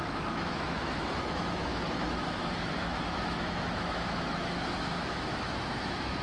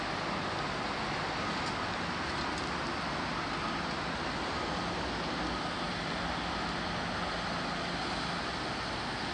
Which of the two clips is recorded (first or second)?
second